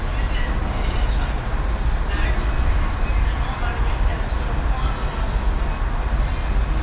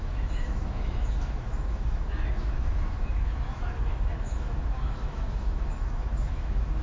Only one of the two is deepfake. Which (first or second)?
second